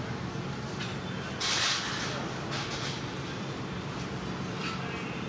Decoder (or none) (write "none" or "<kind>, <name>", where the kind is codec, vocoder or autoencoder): none